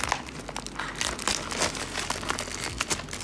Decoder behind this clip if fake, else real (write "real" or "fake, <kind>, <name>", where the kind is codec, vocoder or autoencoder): real